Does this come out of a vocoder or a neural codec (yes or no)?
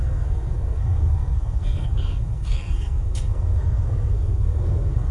yes